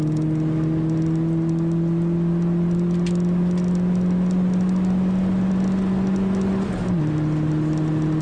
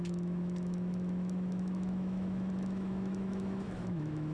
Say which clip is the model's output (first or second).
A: second